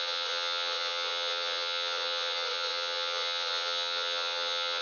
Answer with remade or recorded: remade